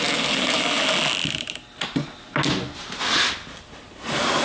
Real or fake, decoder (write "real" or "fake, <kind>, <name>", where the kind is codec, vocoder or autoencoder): real